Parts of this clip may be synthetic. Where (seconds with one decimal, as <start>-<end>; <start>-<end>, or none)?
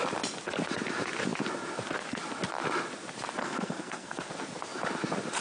3.4-4.3